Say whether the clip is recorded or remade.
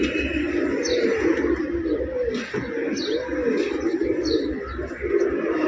recorded